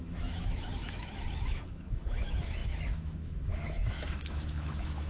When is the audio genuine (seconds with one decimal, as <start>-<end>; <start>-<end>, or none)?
none